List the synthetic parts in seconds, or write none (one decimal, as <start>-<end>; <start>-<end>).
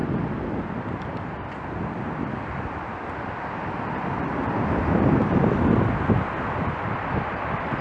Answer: none